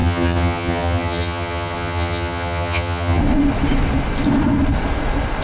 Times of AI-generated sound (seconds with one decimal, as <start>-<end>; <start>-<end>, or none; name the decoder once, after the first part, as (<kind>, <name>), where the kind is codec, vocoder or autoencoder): 0.0-3.2 (vocoder, HiFi-GAN)